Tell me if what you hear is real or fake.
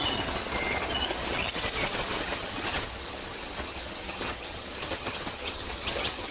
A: fake